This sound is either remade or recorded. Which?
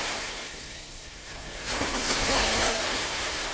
remade